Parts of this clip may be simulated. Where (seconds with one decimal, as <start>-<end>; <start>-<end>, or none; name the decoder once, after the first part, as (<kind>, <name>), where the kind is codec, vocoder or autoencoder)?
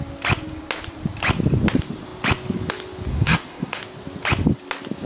3.1-3.8 (codec, SNAC)